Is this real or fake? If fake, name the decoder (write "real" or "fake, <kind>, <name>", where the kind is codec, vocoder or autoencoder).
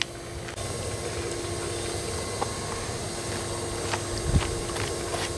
real